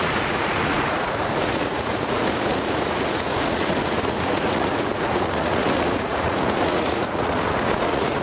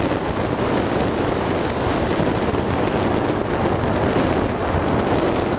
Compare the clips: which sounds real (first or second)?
second